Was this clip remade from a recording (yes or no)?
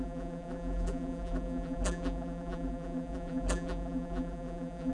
yes